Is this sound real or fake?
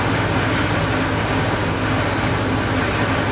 real